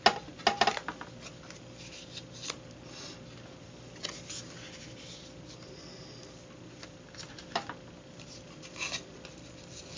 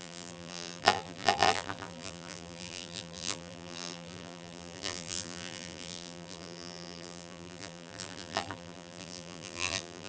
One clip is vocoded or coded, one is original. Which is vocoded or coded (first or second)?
second